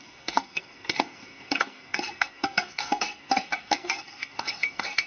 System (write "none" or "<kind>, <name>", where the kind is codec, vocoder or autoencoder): codec, SNAC